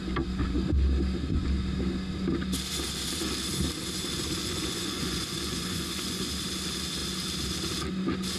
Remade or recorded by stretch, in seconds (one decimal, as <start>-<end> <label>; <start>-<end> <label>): 0.0-4.4 recorded; 4.4-6.3 remade; 6.3-8.4 recorded